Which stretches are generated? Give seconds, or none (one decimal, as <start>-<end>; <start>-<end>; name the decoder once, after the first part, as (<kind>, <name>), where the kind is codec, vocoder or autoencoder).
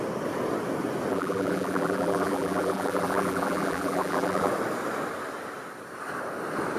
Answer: 1.1-4.5 (vocoder, BigVGAN v2)